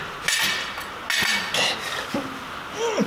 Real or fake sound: real